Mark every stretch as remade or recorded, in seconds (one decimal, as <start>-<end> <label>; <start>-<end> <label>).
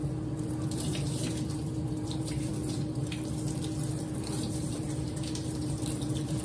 0.0-6.4 remade